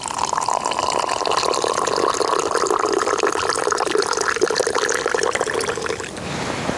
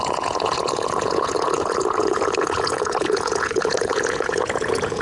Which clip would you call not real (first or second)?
second